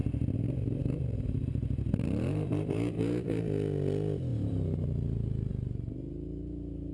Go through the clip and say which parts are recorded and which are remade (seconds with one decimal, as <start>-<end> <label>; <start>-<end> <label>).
0.0-3.4 remade; 3.4-4.3 recorded; 4.3-5.5 remade; 5.5-6.9 recorded